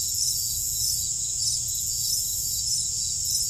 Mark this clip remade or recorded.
remade